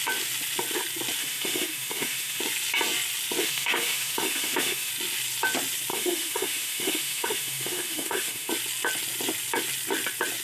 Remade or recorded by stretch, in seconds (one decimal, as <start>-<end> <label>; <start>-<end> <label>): 0.0-1.2 recorded; 1.2-2.4 remade; 2.4-3.4 recorded; 3.4-4.9 remade; 4.9-5.9 recorded; 5.9-8.5 remade; 8.5-10.4 recorded

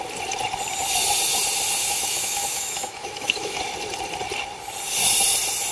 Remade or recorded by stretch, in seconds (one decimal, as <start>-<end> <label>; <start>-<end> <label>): 0.0-1.8 recorded; 1.8-3.6 remade; 3.6-5.7 recorded

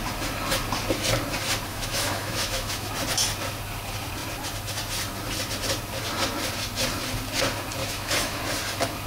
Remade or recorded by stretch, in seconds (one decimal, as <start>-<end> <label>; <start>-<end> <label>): 0.0-1.7 recorded; 1.7-2.9 remade; 2.9-7.8 recorded; 7.8-8.4 remade; 8.4-9.1 recorded

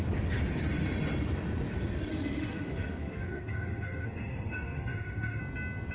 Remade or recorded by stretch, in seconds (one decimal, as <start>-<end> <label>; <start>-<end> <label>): 0.0-2.1 recorded; 2.1-5.4 remade; 5.4-5.9 recorded

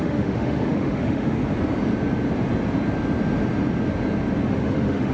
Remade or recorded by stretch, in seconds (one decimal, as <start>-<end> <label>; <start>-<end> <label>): 0.0-1.4 remade; 1.4-4.5 recorded; 4.5-5.1 remade

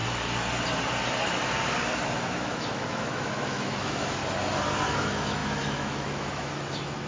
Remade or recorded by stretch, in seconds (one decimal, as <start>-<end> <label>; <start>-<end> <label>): 0.0-2.0 recorded; 2.0-4.2 remade; 4.2-4.9 recorded; 4.9-7.1 remade

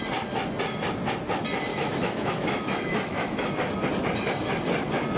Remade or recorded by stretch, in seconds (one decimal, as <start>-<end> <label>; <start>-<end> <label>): 0.0-1.7 recorded; 1.7-3.5 remade; 3.5-5.2 recorded